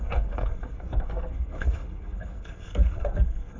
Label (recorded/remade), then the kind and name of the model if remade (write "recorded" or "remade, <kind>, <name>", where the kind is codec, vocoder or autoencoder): remade, codec, SNAC